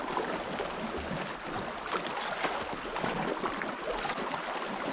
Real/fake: real